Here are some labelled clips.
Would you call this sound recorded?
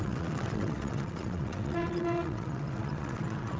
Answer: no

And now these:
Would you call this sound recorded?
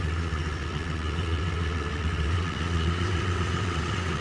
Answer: no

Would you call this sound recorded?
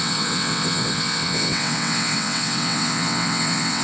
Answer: no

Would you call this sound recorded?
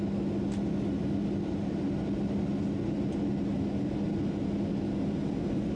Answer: yes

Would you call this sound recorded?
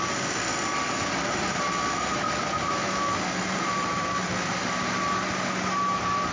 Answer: yes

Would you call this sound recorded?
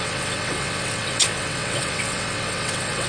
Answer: no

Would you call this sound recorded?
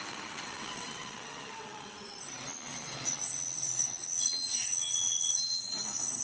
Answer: no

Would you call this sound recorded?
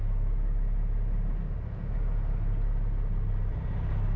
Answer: yes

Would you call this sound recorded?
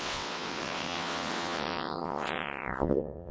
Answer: no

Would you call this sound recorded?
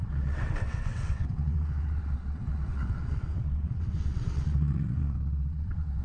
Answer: no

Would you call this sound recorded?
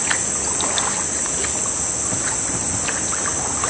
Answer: yes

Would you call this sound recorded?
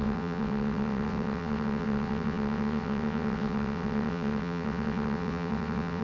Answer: no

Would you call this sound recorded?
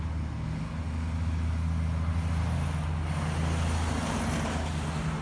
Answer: yes